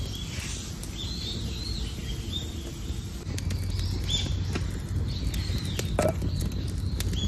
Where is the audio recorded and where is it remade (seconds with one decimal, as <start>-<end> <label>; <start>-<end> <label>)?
0.0-7.3 recorded